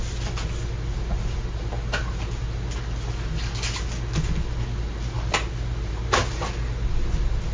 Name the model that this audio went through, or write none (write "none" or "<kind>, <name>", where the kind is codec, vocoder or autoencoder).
none